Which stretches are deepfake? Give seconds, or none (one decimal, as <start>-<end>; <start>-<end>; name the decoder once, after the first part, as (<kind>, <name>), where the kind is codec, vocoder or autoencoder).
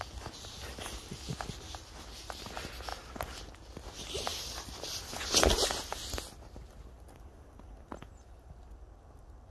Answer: none